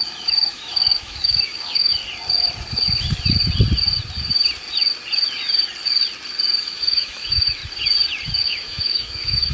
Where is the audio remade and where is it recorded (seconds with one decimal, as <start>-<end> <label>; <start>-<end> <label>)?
0.0-2.0 remade; 2.0-6.6 recorded; 6.6-7.6 remade; 7.6-8.4 recorded; 8.4-9.5 remade